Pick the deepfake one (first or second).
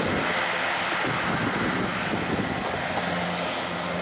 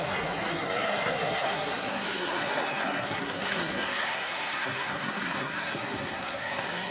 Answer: second